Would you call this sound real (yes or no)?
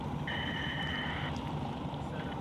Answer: no